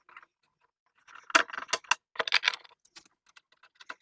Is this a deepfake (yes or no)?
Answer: no